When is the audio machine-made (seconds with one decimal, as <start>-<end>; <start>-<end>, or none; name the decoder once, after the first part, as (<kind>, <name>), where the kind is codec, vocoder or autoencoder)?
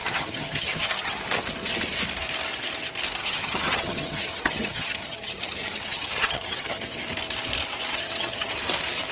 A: 0.0-1.2 (vocoder, HiFi-GAN); 3.2-7.0; 7.9-8.5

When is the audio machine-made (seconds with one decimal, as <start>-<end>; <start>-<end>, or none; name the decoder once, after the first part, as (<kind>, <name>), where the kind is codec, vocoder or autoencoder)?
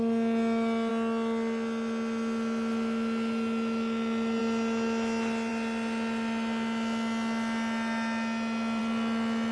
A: none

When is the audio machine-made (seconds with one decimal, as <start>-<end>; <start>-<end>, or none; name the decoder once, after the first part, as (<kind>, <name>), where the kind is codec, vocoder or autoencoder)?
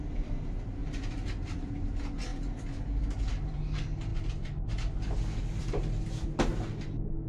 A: 4.1-4.7 (vocoder, BigVGAN v2)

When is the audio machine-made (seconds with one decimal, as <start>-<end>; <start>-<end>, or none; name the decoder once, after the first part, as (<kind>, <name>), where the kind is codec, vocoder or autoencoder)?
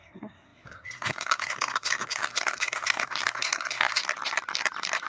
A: 0.0-4.0 (codec, SNAC)